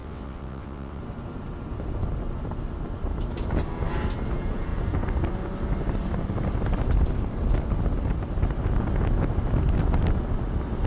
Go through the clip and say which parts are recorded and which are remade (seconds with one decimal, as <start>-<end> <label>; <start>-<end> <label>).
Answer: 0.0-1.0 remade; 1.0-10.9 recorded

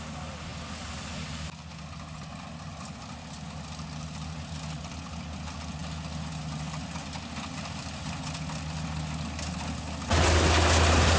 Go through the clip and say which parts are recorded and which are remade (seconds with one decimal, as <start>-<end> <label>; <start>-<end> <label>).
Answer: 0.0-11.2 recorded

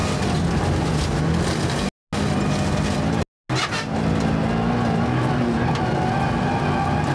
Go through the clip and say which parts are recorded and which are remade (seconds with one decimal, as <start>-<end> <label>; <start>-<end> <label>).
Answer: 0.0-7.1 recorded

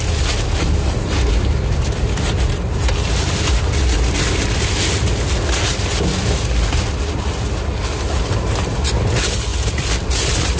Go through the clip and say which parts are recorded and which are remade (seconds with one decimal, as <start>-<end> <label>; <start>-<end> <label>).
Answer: 0.0-10.6 recorded

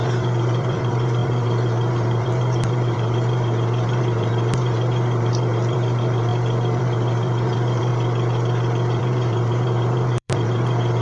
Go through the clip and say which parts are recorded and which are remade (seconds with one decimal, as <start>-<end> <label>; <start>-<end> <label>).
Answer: 0.0-6.3 remade; 6.3-6.8 recorded; 6.8-7.9 remade; 7.9-9.0 recorded; 9.0-11.0 remade